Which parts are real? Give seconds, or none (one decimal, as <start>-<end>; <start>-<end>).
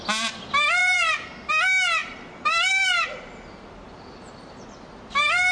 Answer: 0.0-0.8; 1.5-2.0